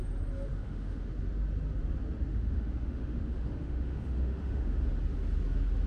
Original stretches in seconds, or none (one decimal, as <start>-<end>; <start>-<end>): 0.0-0.5; 1.1-2.3; 4.9-5.9